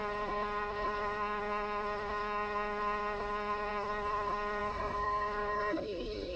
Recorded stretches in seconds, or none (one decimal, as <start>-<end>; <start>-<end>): none